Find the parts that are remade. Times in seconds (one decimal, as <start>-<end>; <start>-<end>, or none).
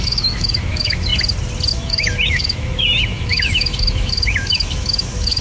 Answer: 0.0-1.1; 1.7-5.4